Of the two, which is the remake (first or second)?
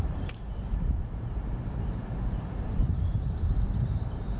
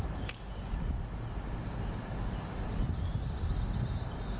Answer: first